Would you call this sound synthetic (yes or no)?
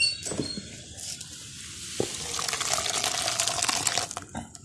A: no